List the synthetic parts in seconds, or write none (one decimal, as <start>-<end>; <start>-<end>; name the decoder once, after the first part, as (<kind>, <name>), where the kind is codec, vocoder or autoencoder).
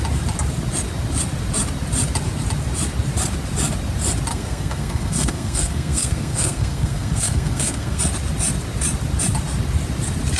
4.3-8.0 (codec, SNAC)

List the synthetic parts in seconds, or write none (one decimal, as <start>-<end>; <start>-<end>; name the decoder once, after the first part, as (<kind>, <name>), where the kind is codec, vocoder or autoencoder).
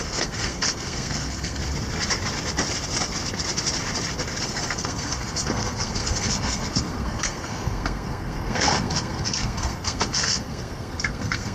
0.0-1.6 (codec, SNAC); 4.4-11.5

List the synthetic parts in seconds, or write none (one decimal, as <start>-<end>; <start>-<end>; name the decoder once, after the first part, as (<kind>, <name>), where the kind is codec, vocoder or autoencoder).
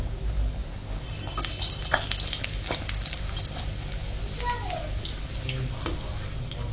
none